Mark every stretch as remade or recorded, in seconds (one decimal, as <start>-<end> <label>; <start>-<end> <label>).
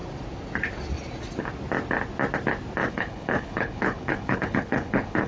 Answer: 0.0-2.9 recorded; 2.9-5.3 remade